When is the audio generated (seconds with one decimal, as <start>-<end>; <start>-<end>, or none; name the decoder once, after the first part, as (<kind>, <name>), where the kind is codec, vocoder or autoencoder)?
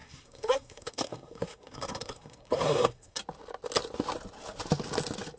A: 0.0-3.2 (codec, SNAC)